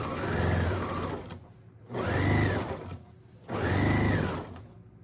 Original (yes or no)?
yes